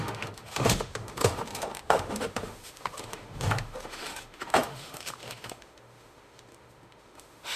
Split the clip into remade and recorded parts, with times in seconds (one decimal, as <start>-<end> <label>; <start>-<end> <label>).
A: 0.0-7.6 remade